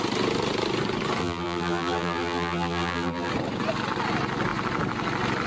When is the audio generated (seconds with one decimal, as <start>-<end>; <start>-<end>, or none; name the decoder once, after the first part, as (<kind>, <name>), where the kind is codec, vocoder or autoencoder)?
1.2-3.3 (vocoder, BigVGAN v2)